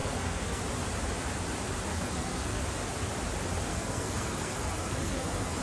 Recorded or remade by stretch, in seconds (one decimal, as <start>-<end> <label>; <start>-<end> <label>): 0.0-0.6 remade; 0.6-1.9 recorded; 1.9-2.6 remade; 2.6-3.7 recorded; 3.7-5.6 remade